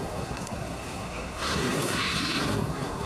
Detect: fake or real fake